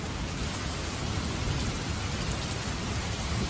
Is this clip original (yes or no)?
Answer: yes